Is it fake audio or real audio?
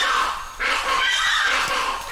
real